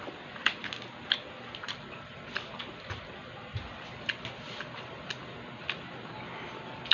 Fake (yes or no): no